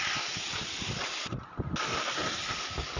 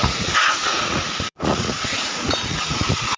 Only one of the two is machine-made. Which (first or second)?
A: second